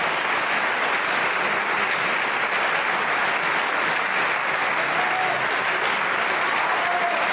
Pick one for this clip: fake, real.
real